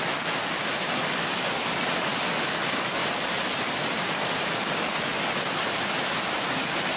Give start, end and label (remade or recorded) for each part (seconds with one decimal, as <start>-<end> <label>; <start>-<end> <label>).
0.0-7.0 recorded

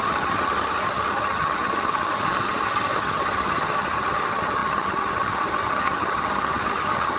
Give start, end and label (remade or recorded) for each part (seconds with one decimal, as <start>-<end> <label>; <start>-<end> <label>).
0.0-7.2 remade

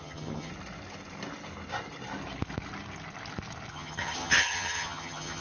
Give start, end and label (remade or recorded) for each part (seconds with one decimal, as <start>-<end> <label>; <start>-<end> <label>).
0.0-0.5 remade; 0.5-3.7 recorded; 3.7-5.4 remade

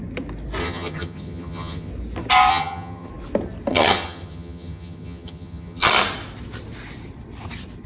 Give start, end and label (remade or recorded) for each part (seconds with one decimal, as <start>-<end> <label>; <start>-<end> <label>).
0.0-0.6 recorded; 0.6-1.9 remade; 1.9-2.5 recorded; 2.5-3.1 remade; 3.1-3.7 recorded; 3.7-5.9 remade; 5.9-7.9 recorded

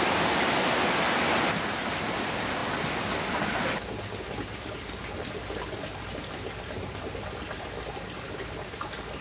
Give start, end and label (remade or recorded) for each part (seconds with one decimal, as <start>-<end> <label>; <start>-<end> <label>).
0.0-9.2 recorded

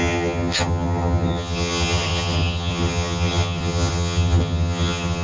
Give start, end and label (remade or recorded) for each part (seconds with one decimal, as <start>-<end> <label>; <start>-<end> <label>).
0.0-5.2 remade

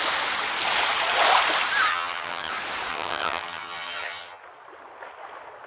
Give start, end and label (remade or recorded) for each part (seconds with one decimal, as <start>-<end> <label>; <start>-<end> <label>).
0.0-1.9 recorded; 1.9-2.5 remade; 2.5-2.9 recorded; 2.9-4.4 remade; 4.4-5.7 recorded

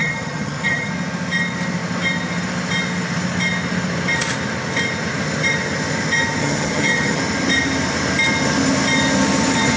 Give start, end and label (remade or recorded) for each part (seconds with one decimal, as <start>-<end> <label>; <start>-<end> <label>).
0.0-0.9 remade; 0.9-6.4 recorded; 6.4-7.2 remade; 7.2-9.8 recorded